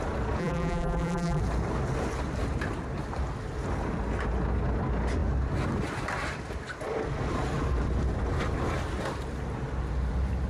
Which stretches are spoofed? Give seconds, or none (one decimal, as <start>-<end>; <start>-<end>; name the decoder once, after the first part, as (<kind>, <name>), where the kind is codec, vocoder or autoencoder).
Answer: 0.4-1.4 (vocoder, BigVGAN v2)